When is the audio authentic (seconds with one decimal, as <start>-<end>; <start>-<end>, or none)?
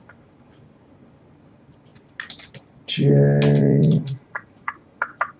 0.0-3.6; 4.7-5.4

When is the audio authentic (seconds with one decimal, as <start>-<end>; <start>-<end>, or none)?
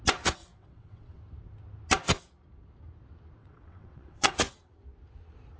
0.0-0.4; 1.2-3.4; 4.3-5.6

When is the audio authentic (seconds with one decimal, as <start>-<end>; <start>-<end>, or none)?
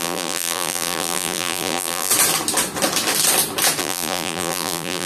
2.1-3.8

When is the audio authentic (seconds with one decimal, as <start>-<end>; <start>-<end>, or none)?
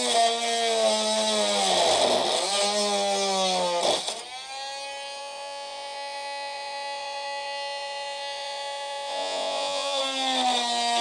0.0-5.2; 10.0-11.0